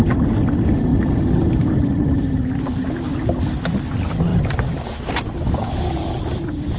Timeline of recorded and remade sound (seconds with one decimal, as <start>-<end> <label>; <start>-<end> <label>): 0.0-6.8 recorded